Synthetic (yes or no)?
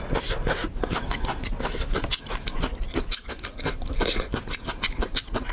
no